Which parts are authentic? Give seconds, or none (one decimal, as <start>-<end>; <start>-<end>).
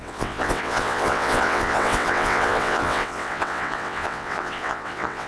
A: none